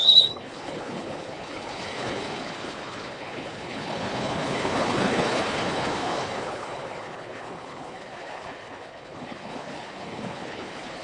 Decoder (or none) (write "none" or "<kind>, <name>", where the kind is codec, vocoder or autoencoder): codec, HILCodec